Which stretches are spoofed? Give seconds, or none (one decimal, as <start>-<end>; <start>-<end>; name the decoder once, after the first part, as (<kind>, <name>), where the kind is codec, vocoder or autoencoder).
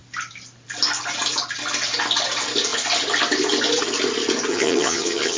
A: 4.5-5.4 (vocoder, HiFi-GAN)